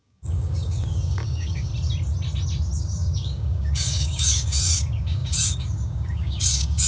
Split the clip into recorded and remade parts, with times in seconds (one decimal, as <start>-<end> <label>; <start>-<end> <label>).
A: 0.0-1.7 remade; 1.7-2.8 recorded; 2.8-6.9 remade